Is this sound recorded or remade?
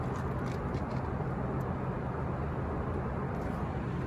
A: recorded